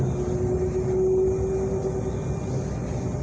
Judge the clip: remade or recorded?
recorded